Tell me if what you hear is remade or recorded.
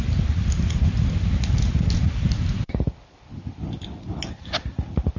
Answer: recorded